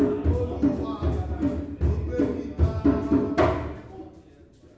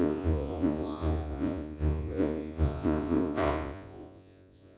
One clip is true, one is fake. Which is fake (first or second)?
second